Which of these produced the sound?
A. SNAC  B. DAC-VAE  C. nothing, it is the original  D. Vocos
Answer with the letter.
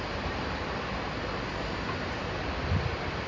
C